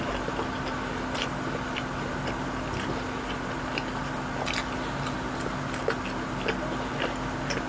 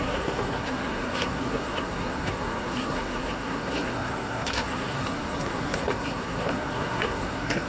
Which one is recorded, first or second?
first